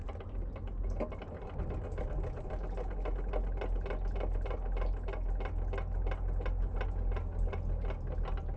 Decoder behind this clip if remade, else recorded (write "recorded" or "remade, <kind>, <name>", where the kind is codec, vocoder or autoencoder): recorded